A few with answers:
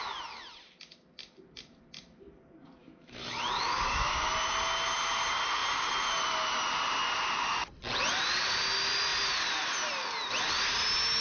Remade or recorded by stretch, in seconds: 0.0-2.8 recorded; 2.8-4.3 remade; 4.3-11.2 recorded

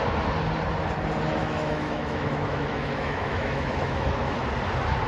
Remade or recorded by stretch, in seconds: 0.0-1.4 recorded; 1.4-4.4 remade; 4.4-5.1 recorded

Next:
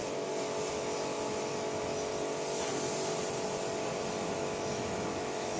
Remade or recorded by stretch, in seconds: 0.0-0.7 recorded; 0.7-2.1 remade; 2.1-4.4 recorded; 4.4-5.6 remade

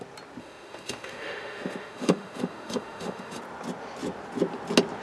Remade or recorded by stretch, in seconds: 0.0-0.4 recorded; 0.4-3.4 remade; 3.4-5.0 recorded

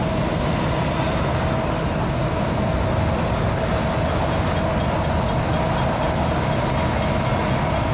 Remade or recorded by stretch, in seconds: 0.0-7.9 recorded

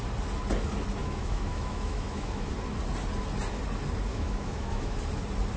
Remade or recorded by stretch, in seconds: 0.0-1.0 recorded; 1.0-2.5 remade; 2.5-4.1 recorded; 4.1-5.0 remade; 5.0-5.6 recorded

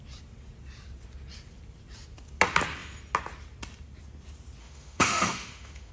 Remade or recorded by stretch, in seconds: 0.0-4.6 recorded; 4.6-5.9 remade